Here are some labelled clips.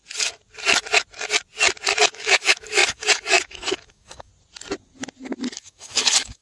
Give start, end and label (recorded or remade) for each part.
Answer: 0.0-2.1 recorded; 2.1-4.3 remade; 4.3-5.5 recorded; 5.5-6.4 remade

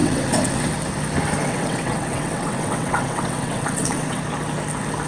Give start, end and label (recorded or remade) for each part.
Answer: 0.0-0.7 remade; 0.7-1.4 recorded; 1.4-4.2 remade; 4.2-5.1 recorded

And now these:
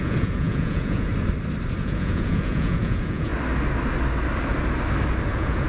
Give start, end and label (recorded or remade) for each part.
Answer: 0.0-1.1 remade; 1.1-1.8 recorded; 1.8-3.3 remade; 3.3-5.3 recorded; 5.3-5.7 remade

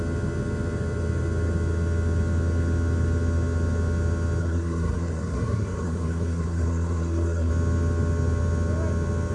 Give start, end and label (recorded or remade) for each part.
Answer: 0.0-4.4 recorded; 4.4-7.5 remade; 7.5-9.3 recorded